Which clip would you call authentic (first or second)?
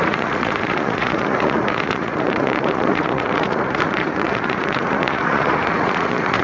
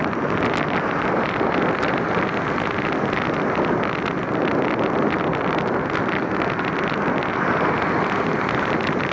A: second